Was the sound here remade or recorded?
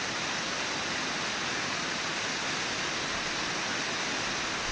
recorded